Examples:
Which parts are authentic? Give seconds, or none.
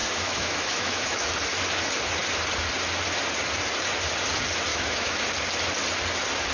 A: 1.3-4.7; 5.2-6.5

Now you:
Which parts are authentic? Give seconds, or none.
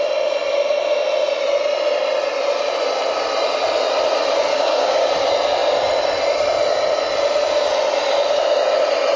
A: 0.0-4.5; 5.1-9.2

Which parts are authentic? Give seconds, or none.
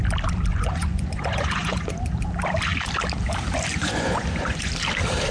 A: 0.0-0.5; 1.9-3.7; 4.7-5.3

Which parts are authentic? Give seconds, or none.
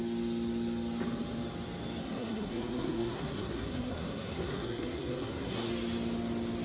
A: 0.0-2.0; 5.7-6.6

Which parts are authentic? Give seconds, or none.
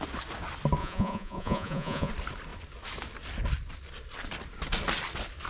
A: 0.0-0.8; 2.1-5.5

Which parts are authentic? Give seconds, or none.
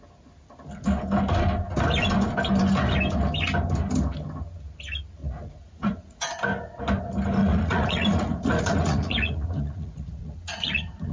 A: 0.0-5.2; 6.2-7.4